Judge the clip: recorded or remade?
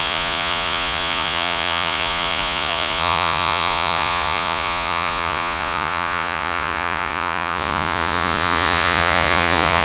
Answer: remade